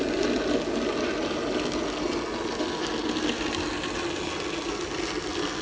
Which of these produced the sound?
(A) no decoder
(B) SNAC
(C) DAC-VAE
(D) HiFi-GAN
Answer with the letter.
A